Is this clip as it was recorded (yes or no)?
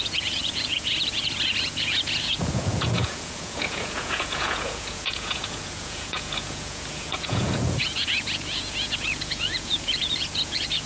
no